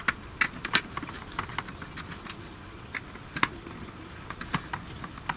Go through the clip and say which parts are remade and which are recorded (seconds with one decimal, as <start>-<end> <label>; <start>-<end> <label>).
0.0-5.4 recorded